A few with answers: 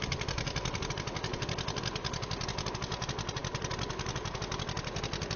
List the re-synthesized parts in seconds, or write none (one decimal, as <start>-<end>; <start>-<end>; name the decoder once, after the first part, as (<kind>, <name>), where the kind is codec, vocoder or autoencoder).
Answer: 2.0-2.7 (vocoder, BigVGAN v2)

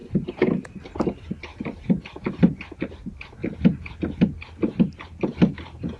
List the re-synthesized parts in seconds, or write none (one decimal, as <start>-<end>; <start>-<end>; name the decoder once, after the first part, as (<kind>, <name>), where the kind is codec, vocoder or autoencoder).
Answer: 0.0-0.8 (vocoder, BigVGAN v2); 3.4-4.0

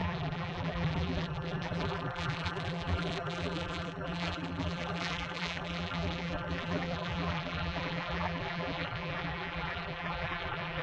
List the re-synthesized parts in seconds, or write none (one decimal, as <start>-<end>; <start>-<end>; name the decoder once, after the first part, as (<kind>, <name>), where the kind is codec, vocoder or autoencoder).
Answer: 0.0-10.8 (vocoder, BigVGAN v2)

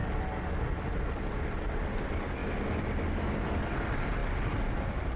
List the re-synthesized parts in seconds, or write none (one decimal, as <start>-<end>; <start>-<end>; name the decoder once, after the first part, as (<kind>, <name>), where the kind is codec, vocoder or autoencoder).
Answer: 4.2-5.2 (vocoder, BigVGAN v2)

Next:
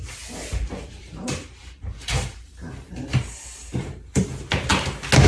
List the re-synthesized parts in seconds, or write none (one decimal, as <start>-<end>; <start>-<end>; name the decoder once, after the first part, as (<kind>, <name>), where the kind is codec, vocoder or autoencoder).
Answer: 1.0-4.2 (vocoder, BigVGAN v2)

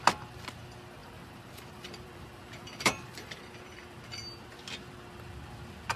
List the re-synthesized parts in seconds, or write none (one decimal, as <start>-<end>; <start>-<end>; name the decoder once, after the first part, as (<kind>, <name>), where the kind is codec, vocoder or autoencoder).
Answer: 1.0-3.4 (vocoder, BigVGAN v2)

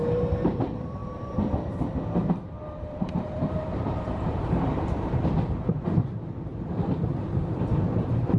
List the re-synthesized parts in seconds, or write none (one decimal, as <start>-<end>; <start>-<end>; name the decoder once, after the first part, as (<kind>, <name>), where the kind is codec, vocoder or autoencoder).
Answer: 0.0-6.5 (vocoder, BigVGAN v2); 7.2-8.4

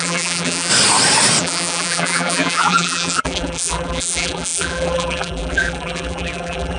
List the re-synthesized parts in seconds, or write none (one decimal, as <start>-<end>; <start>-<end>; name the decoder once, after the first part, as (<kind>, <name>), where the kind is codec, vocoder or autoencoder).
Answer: 0.0-0.7 (vocoder, BigVGAN v2); 1.4-6.8